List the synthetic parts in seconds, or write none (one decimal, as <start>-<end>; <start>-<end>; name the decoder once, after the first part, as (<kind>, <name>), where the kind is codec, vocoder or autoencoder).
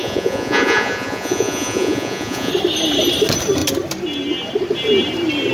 0.0-2.5 (vocoder, Vocos)